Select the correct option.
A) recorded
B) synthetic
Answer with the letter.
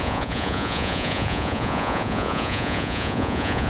B